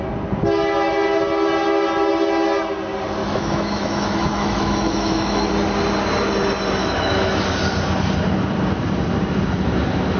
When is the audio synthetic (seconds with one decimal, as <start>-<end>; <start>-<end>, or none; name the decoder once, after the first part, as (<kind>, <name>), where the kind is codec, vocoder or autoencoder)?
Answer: 3.2-5.5 (autoencoder, DAC-VAE); 6.8-7.4